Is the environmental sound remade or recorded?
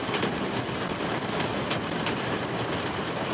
remade